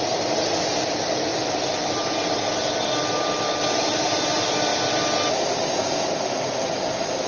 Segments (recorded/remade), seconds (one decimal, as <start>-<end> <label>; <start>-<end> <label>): 0.0-7.3 recorded